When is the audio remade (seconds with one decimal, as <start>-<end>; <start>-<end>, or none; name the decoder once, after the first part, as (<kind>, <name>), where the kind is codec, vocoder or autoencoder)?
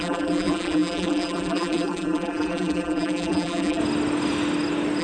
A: 0.0-3.8 (vocoder, BigVGAN v2)